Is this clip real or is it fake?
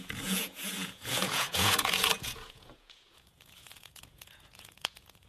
fake